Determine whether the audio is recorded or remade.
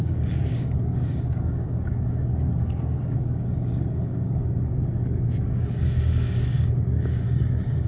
remade